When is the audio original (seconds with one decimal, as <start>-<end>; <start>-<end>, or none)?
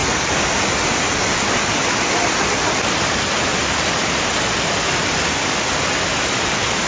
0.0-3.5; 4.2-6.9